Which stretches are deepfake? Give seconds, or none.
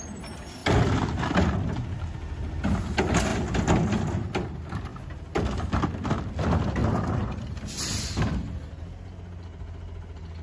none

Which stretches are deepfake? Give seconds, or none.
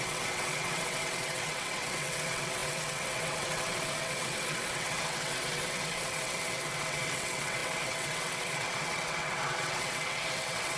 0.0-10.8 (vocoder, WaveNeXt)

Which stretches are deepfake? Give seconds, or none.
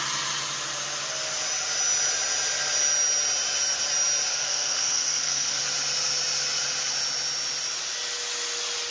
4.3-5.6 (codec, SNAC)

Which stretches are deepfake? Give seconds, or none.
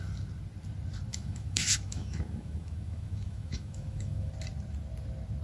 1.1-4.3 (autoencoder, DAC-VAE)